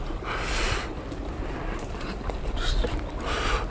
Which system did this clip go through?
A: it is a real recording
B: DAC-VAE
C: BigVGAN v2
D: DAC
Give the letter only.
A